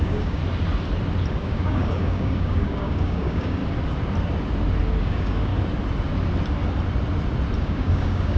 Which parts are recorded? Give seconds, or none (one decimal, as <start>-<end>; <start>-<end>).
0.4-1.3; 3.6-5.0; 5.5-7.6